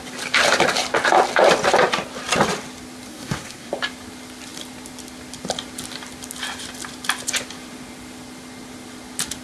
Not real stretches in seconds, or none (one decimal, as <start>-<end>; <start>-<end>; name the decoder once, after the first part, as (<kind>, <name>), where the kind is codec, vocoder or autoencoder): 3.1-3.7 (codec, SNAC)